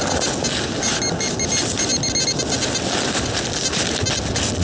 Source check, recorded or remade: recorded